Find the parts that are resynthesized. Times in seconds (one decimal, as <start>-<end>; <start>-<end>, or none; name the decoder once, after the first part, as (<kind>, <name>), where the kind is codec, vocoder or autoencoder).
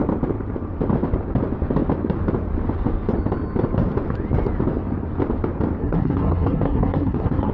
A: 5.8-7.5 (codec, SNAC)